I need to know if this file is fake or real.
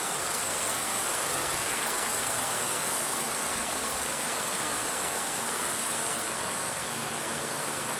fake